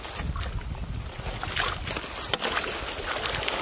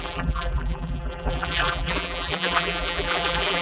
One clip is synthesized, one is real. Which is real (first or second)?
first